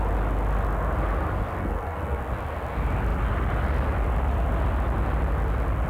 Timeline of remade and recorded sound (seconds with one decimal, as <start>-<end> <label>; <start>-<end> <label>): 0.0-1.6 recorded; 1.6-2.2 remade; 2.2-5.9 recorded